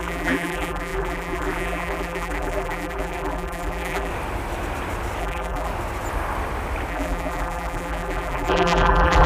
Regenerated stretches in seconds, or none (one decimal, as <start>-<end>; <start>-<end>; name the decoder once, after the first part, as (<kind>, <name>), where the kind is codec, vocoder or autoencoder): 0.0-4.1 (vocoder, BigVGAN v2); 5.2-5.7; 6.9-9.3